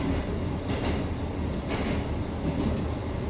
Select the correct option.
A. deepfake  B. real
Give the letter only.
B